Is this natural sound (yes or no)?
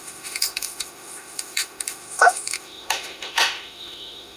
no